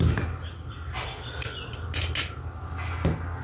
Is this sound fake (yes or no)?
no